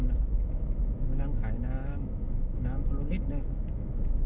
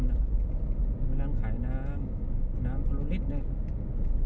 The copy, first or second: first